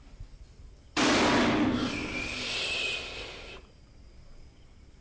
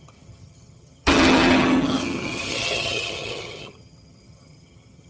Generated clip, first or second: second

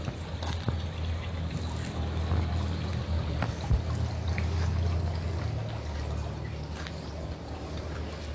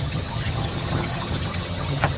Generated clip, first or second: second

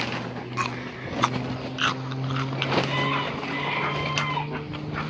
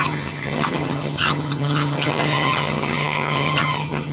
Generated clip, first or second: second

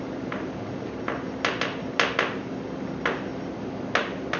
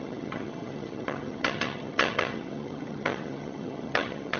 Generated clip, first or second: second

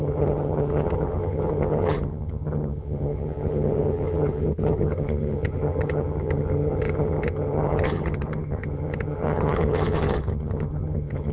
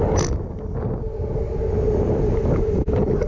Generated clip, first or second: first